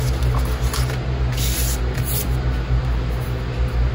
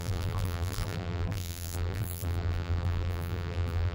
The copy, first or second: second